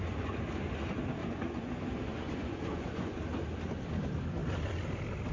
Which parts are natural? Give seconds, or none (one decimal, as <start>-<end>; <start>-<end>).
0.0-1.2; 1.7-2.1; 3.2-5.3